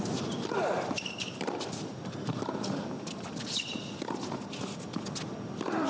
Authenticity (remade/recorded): recorded